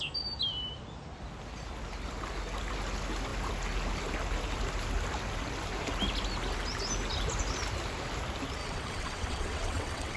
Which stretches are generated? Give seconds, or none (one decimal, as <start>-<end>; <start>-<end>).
8.6-10.2